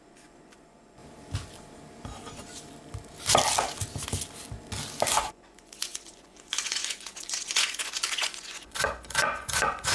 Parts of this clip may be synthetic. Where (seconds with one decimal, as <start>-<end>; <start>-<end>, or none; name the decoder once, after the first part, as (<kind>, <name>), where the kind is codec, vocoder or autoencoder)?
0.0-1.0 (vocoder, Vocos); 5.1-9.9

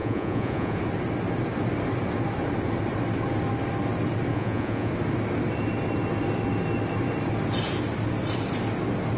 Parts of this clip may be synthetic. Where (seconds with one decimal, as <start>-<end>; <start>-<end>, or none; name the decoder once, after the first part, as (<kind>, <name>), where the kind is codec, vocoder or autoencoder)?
0.0-0.8 (vocoder, Vocos); 4.3-4.9

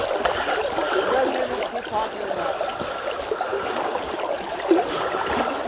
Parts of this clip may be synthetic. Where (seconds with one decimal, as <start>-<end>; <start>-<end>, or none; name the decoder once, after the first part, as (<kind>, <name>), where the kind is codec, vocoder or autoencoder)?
3.5-4.0 (codec, DAC)

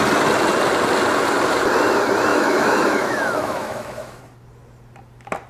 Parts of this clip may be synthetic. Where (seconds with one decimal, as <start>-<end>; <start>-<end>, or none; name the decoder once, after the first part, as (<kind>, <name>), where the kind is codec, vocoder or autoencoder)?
2.3-4.2 (autoencoder, DAC-VAE)

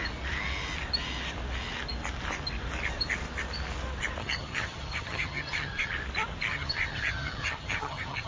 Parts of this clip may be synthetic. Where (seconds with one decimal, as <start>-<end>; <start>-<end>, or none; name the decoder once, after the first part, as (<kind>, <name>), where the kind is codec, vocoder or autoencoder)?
4.2-5.9 (vocoder, HiFi-GAN); 6.5-8.3

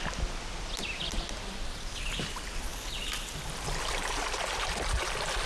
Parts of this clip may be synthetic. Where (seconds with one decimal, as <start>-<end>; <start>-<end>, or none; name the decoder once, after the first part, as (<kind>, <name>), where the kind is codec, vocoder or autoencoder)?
none

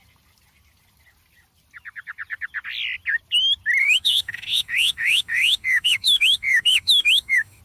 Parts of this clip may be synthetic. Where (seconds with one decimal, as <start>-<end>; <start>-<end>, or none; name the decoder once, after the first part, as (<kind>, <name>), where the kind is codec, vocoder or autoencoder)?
3.8-7.6 (autoencoder, DAC-VAE)